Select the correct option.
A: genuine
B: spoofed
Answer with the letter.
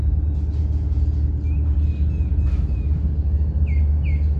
A